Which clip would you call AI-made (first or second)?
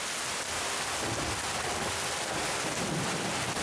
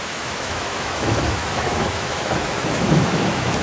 second